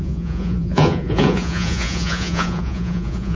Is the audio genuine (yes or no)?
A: no